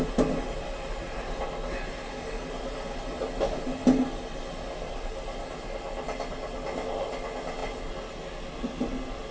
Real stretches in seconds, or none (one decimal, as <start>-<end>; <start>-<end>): 0.0-9.3